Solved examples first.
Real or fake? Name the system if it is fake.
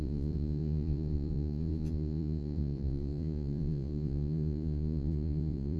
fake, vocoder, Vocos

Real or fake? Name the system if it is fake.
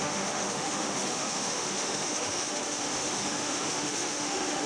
fake, autoencoder, DAC-VAE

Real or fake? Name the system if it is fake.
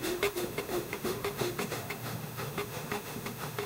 fake, autoencoder, DAC-VAE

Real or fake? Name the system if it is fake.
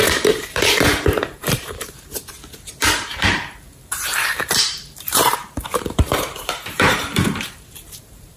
fake, vocoder, BigVGAN v2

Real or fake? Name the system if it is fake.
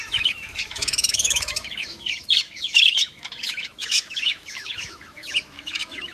fake, autoencoder, DAC-VAE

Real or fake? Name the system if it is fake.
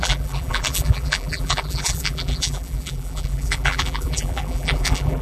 fake, vocoder, BigVGAN v2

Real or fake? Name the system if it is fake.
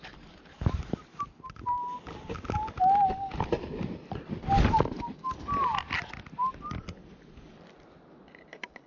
real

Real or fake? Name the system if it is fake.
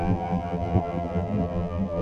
fake, vocoder, BigVGAN v2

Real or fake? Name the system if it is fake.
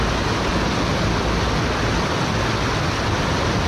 real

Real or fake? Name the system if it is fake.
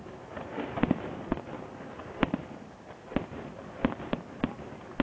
real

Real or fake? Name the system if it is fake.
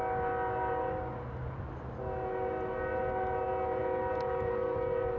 real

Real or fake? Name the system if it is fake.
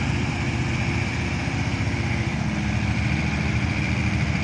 fake, vocoder, BigVGAN v2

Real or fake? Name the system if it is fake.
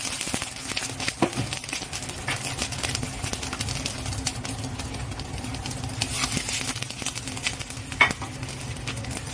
real